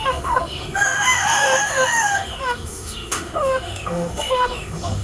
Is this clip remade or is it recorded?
remade